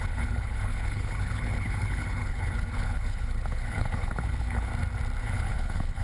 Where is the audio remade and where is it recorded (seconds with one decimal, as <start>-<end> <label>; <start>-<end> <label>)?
0.0-4.7 remade; 4.7-5.2 recorded; 5.2-6.0 remade

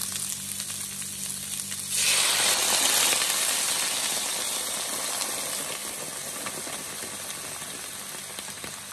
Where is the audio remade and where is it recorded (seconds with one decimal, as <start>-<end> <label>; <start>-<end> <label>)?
0.0-8.9 recorded

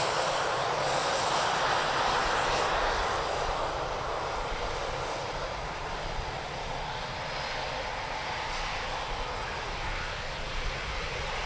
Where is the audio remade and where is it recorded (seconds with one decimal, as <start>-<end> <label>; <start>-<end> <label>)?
0.0-11.5 recorded

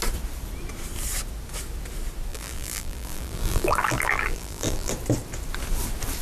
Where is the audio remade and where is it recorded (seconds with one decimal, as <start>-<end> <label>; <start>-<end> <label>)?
0.0-2.3 recorded; 2.3-4.9 remade; 4.9-6.2 recorded

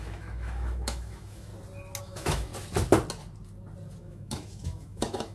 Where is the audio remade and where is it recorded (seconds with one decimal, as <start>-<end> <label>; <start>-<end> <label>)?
0.0-1.5 remade; 1.5-2.0 recorded; 2.0-2.5 remade; 2.5-4.0 recorded; 4.0-5.3 remade